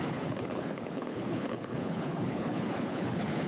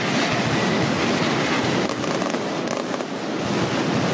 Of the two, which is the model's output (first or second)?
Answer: first